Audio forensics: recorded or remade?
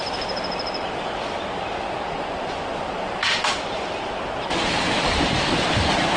recorded